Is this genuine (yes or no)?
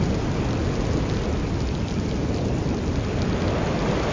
yes